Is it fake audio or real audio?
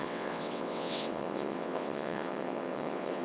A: fake